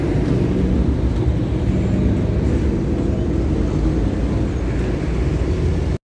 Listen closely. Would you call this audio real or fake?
real